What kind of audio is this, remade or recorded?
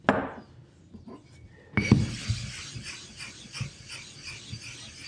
recorded